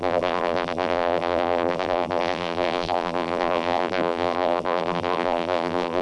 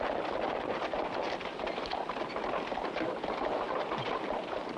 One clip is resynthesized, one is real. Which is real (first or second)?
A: second